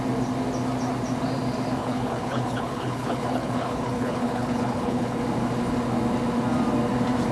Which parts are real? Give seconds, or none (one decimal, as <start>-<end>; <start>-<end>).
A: 0.0-1.8; 5.2-7.3